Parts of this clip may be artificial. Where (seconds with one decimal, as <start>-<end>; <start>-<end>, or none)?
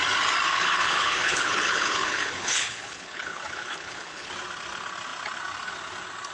0.5-4.3